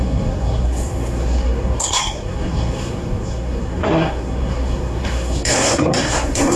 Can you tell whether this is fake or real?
fake